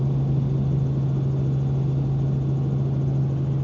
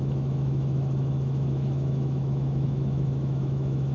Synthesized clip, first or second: second